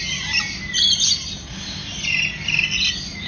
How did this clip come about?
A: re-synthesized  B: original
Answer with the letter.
B